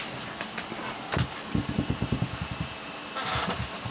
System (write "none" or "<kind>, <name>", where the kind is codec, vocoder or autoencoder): none